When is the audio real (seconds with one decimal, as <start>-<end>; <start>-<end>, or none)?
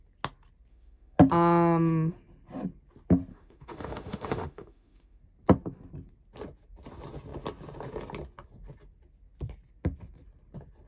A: 0.0-0.7; 1.2-3.3; 5.2-10.9